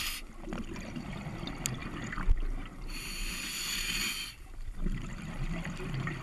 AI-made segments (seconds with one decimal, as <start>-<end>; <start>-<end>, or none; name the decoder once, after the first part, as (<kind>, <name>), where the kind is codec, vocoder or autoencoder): none